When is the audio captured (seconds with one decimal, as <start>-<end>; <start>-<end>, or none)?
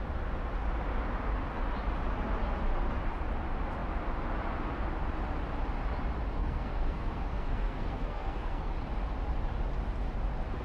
0.0-6.4; 8.7-10.6